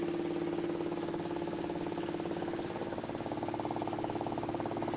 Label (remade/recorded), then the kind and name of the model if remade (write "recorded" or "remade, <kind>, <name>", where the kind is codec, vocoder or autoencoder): recorded